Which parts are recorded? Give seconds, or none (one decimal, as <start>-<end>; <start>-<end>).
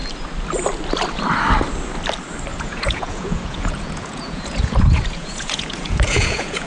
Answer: 0.0-2.5